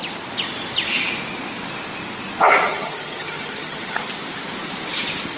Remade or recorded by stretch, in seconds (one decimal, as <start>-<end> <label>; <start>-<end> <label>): 0.0-2.7 recorded; 2.7-4.0 remade; 4.0-5.4 recorded